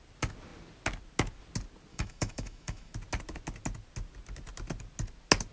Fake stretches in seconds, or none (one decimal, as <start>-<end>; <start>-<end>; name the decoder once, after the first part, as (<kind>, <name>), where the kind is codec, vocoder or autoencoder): 1.9-2.9 (autoencoder, DAC-VAE)